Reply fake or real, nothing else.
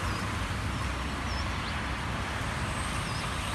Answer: real